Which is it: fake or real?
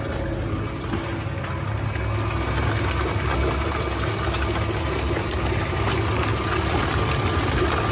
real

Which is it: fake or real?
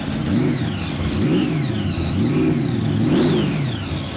real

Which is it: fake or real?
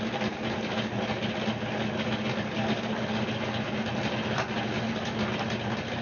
real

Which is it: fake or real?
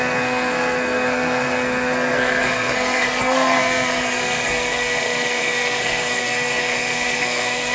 fake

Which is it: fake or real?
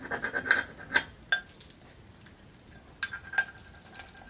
real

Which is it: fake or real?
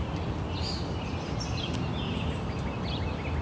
real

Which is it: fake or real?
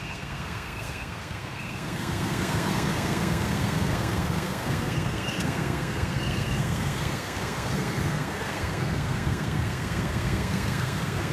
fake